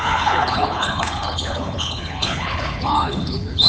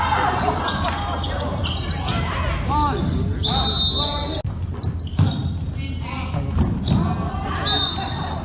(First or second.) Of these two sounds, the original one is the second